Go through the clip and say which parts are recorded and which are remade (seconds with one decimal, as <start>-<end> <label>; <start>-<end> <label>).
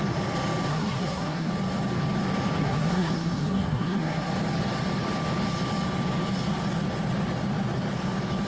0.0-0.7 recorded; 0.7-1.5 remade; 1.5-2.6 recorded; 2.6-4.3 remade; 4.3-8.5 recorded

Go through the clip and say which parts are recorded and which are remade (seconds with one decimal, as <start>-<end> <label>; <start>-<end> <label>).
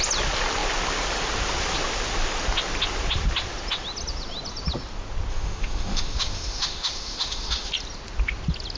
0.0-5.3 recorded; 5.3-7.7 remade; 7.7-8.8 recorded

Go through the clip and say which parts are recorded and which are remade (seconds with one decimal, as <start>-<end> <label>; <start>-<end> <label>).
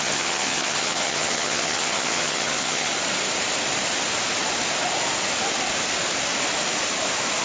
0.0-2.9 remade; 2.9-7.4 recorded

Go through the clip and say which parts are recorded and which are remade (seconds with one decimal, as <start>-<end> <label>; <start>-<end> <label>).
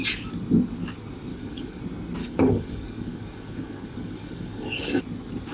0.0-1.3 recorded; 1.3-1.8 remade; 1.8-2.2 recorded; 2.2-5.0 remade; 5.0-5.5 recorded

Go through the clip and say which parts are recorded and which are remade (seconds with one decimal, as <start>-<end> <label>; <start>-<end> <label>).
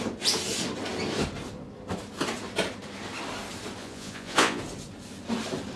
0.0-3.8 recorded; 3.8-4.6 remade; 4.6-5.8 recorded